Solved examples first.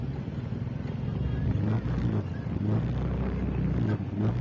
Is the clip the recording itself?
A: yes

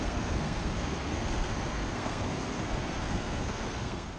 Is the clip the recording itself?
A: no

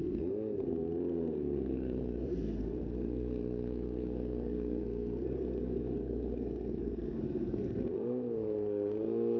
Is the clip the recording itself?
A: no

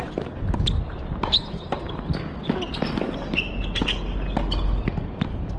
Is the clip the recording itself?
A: yes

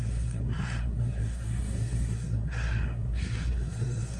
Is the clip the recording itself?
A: no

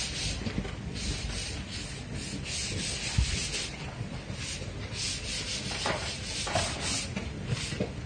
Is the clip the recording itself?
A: yes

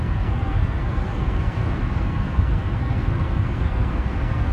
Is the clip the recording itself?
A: no